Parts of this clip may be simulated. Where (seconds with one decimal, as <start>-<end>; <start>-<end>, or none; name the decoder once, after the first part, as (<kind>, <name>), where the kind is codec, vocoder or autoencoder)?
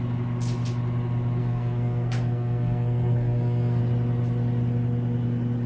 1.4-3.8 (codec, SNAC)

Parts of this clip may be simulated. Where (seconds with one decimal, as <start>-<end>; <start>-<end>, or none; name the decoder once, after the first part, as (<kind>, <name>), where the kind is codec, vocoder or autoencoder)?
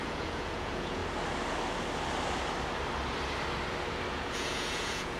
0.0-1.0 (vocoder, Vocos); 4.1-5.2